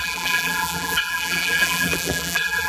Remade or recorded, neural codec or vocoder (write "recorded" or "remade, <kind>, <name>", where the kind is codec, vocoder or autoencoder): remade, vocoder, BigVGAN v2